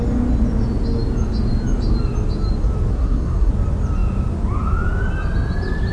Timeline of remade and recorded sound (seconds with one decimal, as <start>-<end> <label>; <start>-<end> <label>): 0.0-2.9 recorded; 2.9-3.5 remade; 3.5-5.9 recorded